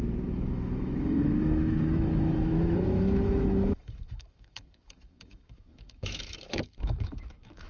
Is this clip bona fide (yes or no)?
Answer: no